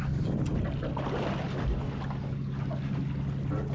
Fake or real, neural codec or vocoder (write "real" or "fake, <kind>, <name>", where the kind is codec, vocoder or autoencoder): real